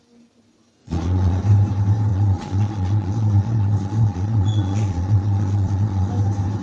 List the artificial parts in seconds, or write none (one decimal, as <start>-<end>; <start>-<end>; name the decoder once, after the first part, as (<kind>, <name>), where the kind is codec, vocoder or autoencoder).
0.8-1.4 (vocoder, Vocos); 2.1-6.1